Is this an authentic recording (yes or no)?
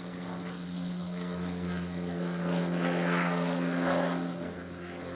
no